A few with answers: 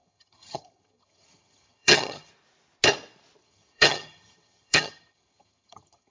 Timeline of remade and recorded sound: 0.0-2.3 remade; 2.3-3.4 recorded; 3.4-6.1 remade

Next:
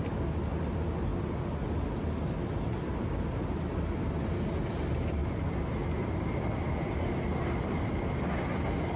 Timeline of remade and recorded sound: 0.0-9.0 recorded

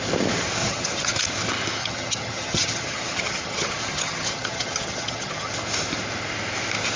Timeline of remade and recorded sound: 0.0-0.6 recorded; 0.6-1.1 remade; 1.1-1.8 recorded; 1.8-5.5 remade; 5.5-7.0 recorded

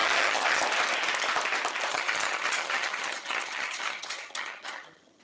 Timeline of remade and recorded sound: 0.0-0.6 remade; 0.6-1.9 recorded; 1.9-5.2 remade